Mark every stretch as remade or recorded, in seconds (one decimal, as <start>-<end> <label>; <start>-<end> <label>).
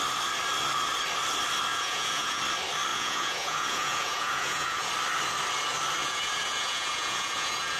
0.0-1.7 recorded; 1.7-2.4 remade; 2.4-2.9 recorded; 2.9-4.9 remade; 4.9-6.0 recorded; 6.0-7.8 remade